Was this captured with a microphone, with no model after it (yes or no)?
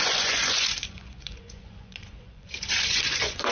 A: no